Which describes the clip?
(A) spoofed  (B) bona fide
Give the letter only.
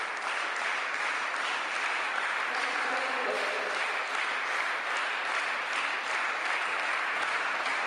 A